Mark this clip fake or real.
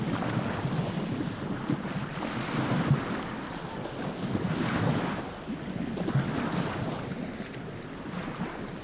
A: real